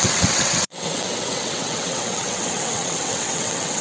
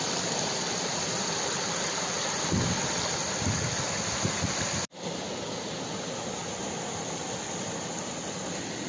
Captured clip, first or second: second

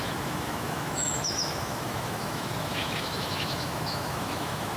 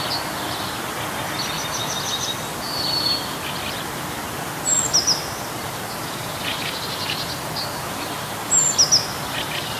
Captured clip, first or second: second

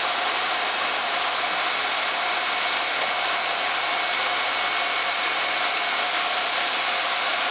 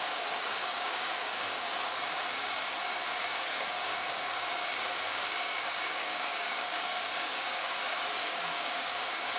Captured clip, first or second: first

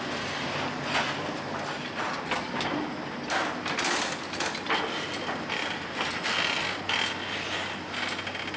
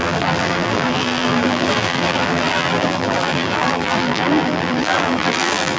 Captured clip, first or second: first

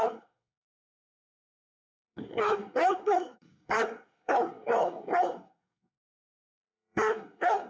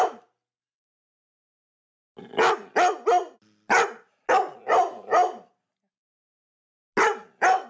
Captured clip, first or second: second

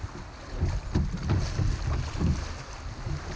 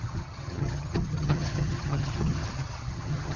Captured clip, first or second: first